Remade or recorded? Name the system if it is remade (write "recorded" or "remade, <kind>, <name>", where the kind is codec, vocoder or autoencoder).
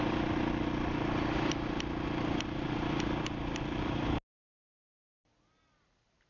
recorded